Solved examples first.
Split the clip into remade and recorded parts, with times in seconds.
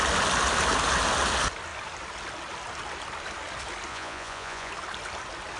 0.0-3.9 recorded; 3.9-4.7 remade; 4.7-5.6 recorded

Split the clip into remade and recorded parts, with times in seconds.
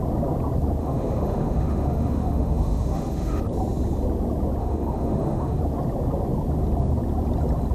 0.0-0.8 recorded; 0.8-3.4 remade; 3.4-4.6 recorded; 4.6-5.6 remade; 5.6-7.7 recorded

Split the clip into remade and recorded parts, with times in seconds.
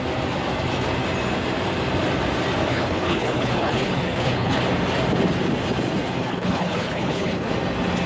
0.0-2.7 recorded; 2.7-4.6 remade; 4.6-6.2 recorded; 6.2-7.5 remade; 7.5-8.1 recorded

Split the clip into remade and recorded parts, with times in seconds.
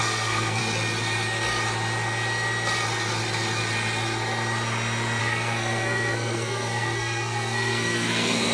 0.0-0.6 remade; 0.6-5.2 recorded; 5.2-8.5 remade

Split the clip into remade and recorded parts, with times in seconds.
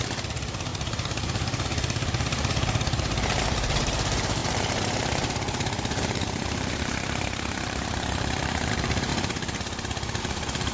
0.0-9.1 remade; 9.1-10.2 recorded; 10.2-10.7 remade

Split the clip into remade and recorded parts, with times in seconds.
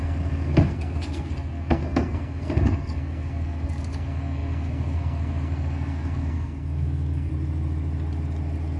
0.0-7.3 remade; 7.3-8.8 recorded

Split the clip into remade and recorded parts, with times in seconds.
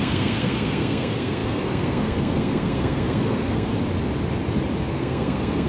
0.0-3.7 remade; 3.7-4.9 recorded; 4.9-5.7 remade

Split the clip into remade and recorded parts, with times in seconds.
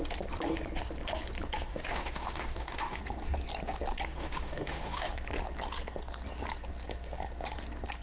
0.0-1.7 recorded; 1.7-3.0 remade; 3.0-4.1 recorded; 4.1-5.1 remade; 5.1-8.0 recorded